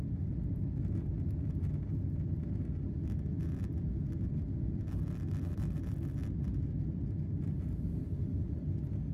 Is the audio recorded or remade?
recorded